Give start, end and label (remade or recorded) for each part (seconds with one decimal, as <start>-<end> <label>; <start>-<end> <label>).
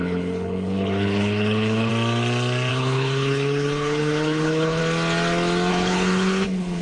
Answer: 0.0-1.9 remade; 1.9-2.7 recorded; 2.7-4.8 remade; 4.8-5.7 recorded; 5.7-6.8 remade